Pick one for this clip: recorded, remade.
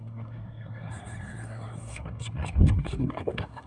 remade